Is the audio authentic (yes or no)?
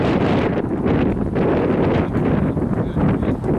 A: yes